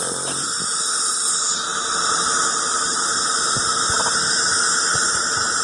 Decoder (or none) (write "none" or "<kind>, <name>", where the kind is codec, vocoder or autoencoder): none